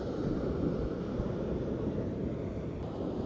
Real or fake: real